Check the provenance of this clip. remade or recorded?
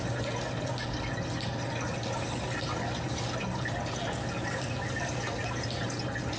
recorded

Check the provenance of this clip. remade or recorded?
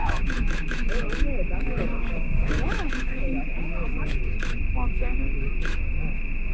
remade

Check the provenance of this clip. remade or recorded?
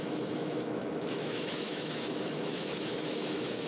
remade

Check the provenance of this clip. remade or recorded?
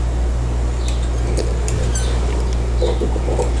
recorded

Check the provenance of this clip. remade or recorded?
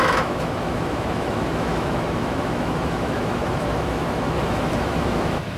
remade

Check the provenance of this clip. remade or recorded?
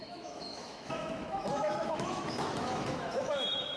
remade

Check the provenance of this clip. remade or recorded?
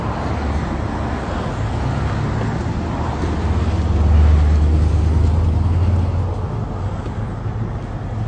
recorded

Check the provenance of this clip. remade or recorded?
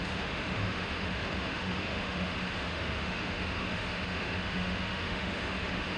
remade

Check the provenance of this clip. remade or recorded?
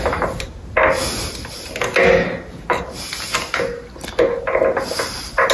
recorded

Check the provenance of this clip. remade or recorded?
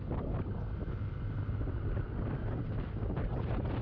recorded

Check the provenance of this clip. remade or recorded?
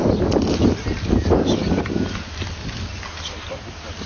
recorded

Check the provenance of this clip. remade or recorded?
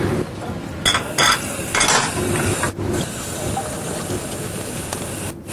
recorded